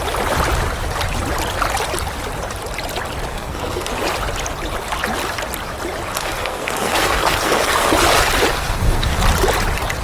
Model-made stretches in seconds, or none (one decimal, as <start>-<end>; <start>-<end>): 3.3-3.9; 6.2-7.9; 8.5-9.2